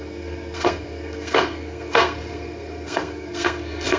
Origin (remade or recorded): remade